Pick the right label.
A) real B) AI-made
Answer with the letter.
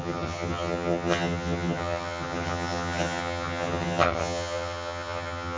B